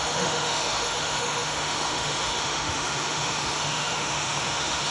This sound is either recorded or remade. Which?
remade